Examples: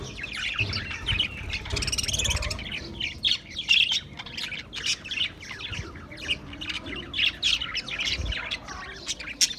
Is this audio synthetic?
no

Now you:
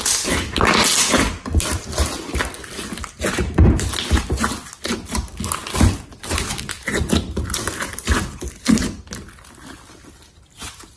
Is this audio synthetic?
no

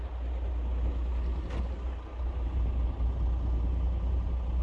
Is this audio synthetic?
no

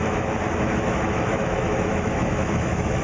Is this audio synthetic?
yes